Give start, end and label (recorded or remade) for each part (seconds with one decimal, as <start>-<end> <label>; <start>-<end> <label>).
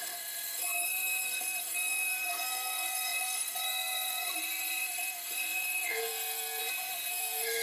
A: 0.0-6.6 remade; 6.6-7.1 recorded; 7.1-7.6 remade